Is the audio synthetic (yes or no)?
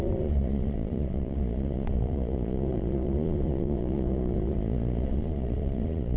yes